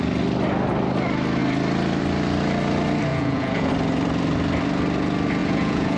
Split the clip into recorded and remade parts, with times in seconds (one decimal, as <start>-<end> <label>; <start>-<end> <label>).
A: 0.0-3.1 recorded; 3.1-3.7 remade; 3.7-5.4 recorded; 5.4-6.0 remade